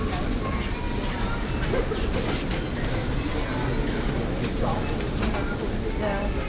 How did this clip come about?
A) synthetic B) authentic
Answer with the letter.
B